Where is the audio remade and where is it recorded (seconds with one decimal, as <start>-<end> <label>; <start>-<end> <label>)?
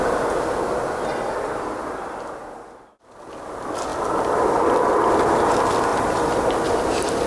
0.0-5.9 recorded; 5.9-6.5 remade; 6.5-7.3 recorded